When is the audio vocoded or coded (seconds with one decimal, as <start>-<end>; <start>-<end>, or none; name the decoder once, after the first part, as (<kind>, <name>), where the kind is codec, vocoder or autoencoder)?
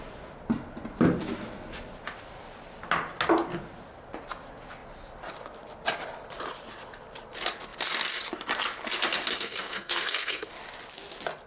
9.3-10.5 (codec, SNAC)